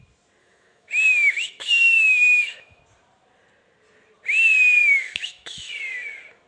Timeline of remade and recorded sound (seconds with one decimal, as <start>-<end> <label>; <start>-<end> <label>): 0.0-0.4 recorded; 0.4-2.8 remade; 2.8-4.8 recorded; 4.8-5.7 remade; 5.7-6.5 recorded

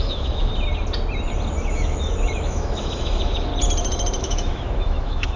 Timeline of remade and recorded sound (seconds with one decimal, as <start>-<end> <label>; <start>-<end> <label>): 0.0-0.5 remade; 0.5-1.7 recorded; 1.7-3.5 remade; 3.5-4.2 recorded; 4.2-5.4 remade

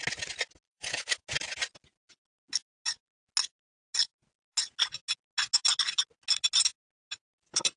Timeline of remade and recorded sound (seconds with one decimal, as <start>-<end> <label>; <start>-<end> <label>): 0.0-0.7 recorded; 0.7-1.2 remade; 1.2-7.8 recorded

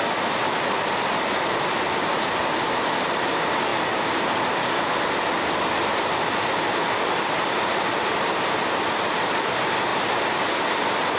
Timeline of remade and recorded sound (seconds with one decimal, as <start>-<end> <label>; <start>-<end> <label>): 0.0-11.2 recorded

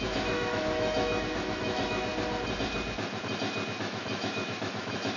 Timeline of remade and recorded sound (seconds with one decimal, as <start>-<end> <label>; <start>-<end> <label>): 0.0-2.1 remade; 2.1-3.8 recorded; 3.8-5.2 remade

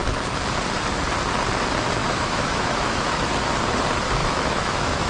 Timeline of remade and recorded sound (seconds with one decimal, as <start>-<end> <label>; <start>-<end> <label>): 0.0-2.0 recorded; 2.0-3.3 remade; 3.3-4.2 recorded; 4.2-5.1 remade

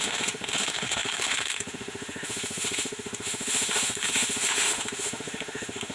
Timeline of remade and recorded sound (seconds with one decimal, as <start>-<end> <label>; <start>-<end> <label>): 0.0-5.9 remade

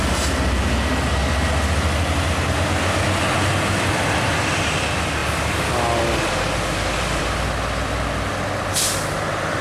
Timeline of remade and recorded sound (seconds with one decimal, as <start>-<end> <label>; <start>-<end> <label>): 0.0-9.6 recorded